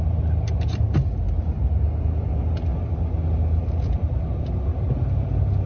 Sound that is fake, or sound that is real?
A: real